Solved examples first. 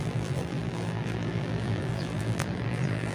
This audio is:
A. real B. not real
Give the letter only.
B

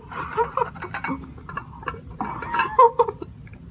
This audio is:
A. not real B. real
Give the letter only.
A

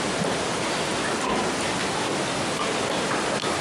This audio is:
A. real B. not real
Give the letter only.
A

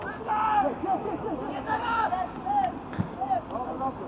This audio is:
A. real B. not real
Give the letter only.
A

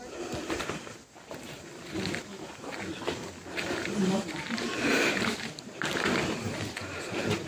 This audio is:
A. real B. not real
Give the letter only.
B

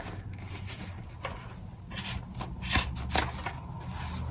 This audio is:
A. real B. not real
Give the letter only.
A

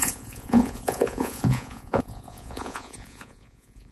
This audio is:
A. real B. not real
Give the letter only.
B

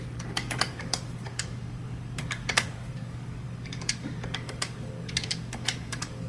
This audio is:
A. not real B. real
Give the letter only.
A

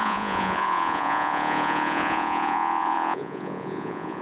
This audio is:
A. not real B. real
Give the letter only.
A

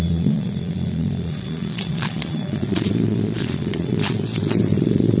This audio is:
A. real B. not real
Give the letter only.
B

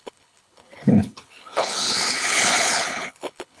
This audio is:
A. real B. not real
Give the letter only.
B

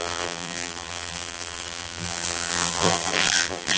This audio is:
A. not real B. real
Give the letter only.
A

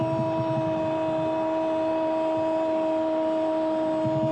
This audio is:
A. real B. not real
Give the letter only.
A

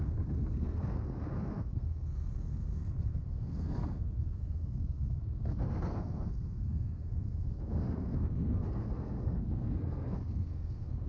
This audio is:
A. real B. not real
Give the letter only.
B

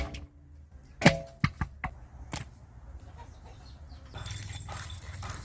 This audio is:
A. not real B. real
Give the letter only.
B